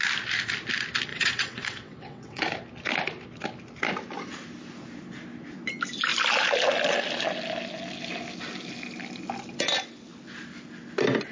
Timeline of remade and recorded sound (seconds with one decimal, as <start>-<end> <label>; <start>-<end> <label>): 0.0-1.1 recorded; 1.1-2.4 remade; 2.4-11.3 recorded

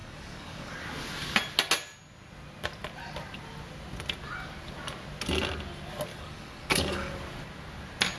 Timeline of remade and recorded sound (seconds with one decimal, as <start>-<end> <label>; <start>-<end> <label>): 0.0-0.7 remade; 0.7-6.1 recorded; 6.1-7.1 remade; 7.1-8.2 recorded

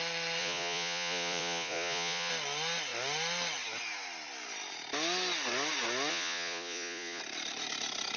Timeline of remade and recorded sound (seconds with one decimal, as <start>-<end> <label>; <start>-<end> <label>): 0.0-0.4 recorded; 0.4-2.3 remade; 2.3-6.1 recorded; 6.1-7.2 remade; 7.2-8.2 recorded

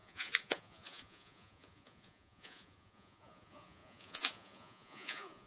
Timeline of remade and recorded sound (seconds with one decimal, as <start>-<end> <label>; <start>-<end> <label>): 0.0-5.5 remade

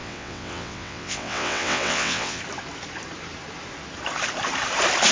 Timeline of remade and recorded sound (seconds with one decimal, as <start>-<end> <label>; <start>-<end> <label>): 0.0-2.4 remade; 2.4-5.1 recorded

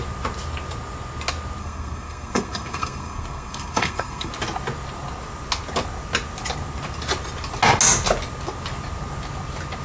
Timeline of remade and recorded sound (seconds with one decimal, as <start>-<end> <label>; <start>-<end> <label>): 0.0-1.6 recorded; 1.6-4.3 remade; 4.3-9.8 recorded

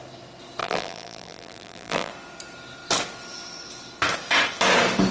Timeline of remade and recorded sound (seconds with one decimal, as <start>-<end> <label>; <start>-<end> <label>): 0.0-0.6 recorded; 0.6-2.1 remade; 2.1-5.1 recorded